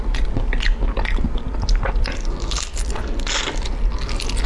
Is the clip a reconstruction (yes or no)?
no